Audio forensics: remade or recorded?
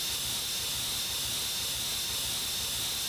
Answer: recorded